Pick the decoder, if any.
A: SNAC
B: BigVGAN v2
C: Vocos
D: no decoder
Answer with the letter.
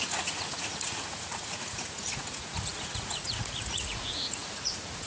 C